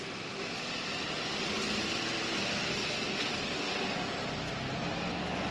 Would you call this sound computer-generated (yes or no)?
no